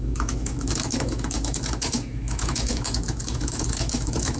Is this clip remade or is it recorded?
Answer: remade